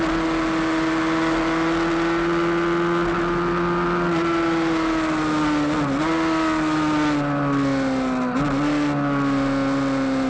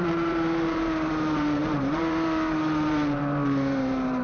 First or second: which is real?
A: first